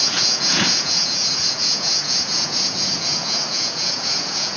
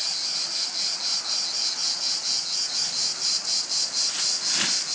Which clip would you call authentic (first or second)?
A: second